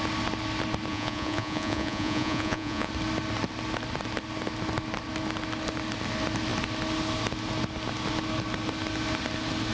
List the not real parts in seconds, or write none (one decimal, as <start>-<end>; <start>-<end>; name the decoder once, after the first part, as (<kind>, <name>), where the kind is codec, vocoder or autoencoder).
0.9-2.9 (vocoder, Vocos)